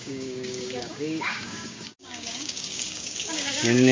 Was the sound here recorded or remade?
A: remade